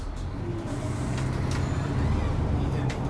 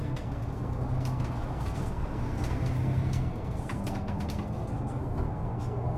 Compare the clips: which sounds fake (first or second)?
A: second